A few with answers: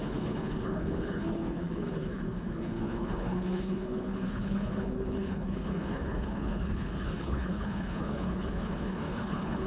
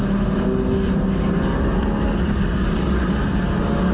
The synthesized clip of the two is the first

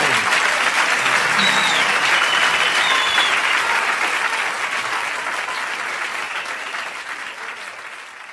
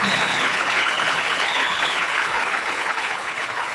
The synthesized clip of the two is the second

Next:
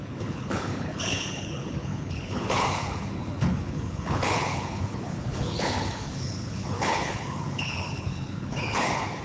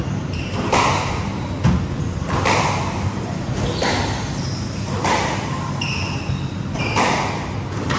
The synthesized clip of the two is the first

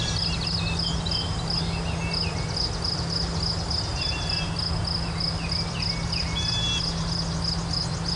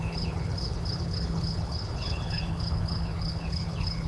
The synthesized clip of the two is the second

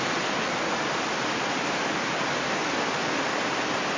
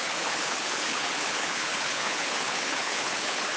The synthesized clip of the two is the second